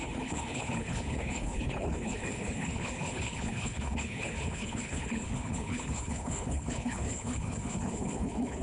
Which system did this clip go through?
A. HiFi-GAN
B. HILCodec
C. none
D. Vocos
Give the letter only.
B